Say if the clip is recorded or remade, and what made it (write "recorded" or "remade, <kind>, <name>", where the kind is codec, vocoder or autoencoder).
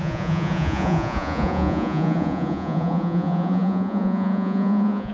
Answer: remade, vocoder, Vocos